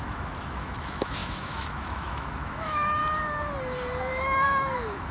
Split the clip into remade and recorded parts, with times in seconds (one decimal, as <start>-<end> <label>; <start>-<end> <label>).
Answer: 0.0-3.0 remade; 3.0-4.2 recorded; 4.2-5.1 remade

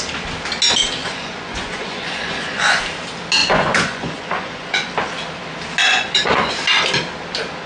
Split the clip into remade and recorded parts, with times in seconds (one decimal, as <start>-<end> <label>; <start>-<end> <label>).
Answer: 0.0-1.0 recorded; 1.0-2.8 remade; 2.8-3.4 recorded; 3.4-4.9 remade; 4.9-5.8 recorded; 5.8-6.5 remade; 6.5-7.7 recorded

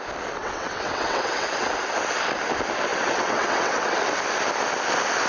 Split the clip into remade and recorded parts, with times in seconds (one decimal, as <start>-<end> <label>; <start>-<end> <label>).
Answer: 0.0-0.4 recorded; 0.4-1.7 remade; 1.7-2.9 recorded; 2.9-4.0 remade; 4.0-5.3 recorded